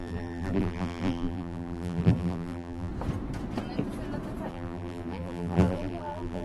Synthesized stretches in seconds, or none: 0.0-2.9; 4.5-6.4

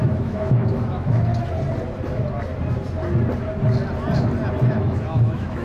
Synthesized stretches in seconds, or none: 0.0-1.3; 4.7-5.6

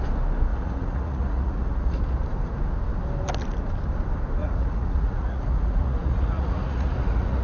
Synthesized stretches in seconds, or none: 0.5-2.0; 4.4-7.4